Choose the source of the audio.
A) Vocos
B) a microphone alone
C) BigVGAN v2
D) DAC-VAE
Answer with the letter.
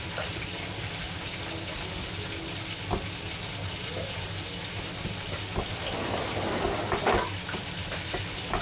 B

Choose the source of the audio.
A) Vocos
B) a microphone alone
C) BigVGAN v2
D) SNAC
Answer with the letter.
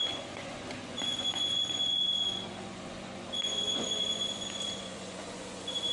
A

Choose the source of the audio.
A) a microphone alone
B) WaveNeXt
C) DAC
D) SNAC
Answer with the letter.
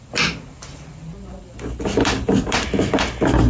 A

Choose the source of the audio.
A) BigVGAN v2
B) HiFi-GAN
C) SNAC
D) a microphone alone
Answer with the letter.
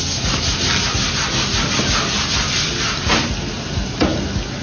D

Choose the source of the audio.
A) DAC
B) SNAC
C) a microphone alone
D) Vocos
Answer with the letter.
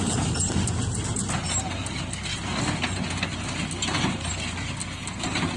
C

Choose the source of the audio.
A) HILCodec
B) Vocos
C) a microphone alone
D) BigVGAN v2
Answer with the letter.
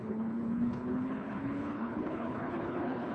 A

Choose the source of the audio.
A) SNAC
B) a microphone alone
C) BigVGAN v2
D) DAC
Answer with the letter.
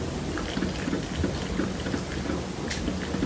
B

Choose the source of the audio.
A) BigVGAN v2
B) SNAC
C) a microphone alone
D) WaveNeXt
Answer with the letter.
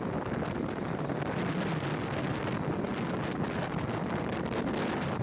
C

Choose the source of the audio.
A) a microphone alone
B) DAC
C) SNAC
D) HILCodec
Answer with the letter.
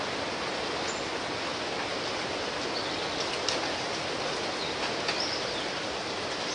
A